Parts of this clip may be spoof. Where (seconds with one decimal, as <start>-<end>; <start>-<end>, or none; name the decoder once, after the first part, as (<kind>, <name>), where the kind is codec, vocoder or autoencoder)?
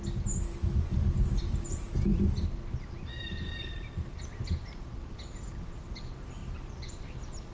none